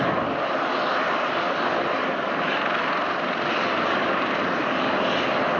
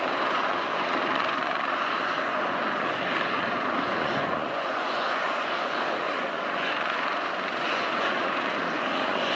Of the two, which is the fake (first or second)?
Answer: second